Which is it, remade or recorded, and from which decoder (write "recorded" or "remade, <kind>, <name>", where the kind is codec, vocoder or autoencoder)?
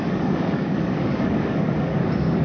remade, codec, DAC